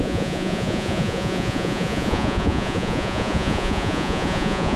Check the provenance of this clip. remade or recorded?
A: remade